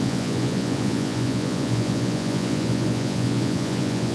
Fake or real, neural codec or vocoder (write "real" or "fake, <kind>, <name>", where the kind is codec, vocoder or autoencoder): fake, vocoder, Vocos